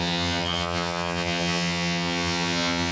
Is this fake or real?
fake